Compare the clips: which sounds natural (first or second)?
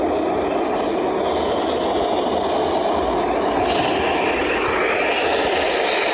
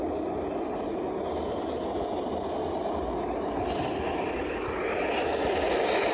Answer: first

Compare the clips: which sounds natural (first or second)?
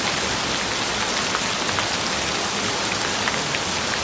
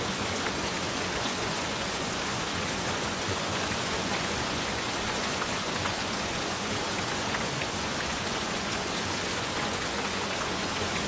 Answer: first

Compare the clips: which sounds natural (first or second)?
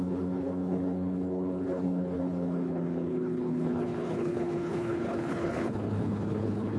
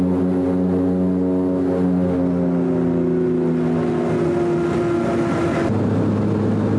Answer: second